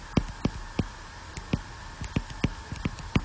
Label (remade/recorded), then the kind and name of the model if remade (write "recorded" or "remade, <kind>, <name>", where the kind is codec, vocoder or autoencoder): recorded